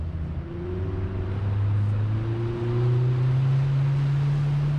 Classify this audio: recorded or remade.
recorded